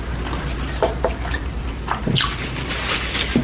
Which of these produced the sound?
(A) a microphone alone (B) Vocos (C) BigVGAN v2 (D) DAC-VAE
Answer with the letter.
C